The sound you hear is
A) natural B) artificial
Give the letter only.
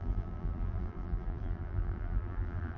B